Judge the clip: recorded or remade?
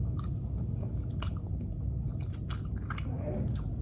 recorded